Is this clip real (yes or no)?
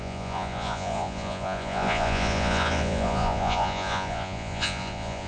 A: no